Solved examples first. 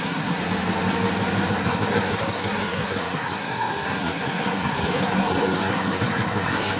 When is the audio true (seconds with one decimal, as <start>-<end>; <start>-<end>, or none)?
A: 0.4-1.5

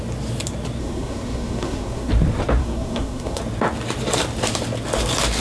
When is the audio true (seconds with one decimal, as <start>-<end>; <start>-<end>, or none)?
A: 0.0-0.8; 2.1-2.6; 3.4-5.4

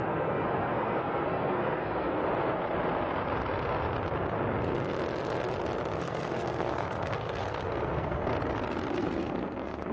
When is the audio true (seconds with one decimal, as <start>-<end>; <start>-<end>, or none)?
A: 2.2-6.0; 8.3-8.9

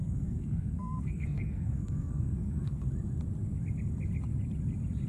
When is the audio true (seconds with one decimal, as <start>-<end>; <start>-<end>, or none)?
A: 2.9-5.1

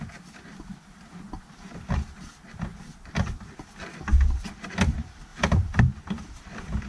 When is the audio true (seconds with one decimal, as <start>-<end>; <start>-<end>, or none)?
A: 0.0-6.9

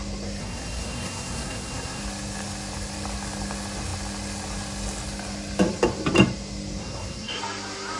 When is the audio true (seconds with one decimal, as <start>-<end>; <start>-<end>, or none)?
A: 0.0-0.4; 2.0-6.8; 7.4-8.0

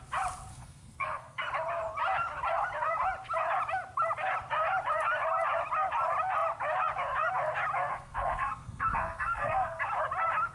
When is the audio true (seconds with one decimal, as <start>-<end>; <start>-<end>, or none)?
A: 0.0-0.5; 1.4-7.9; 9.8-10.5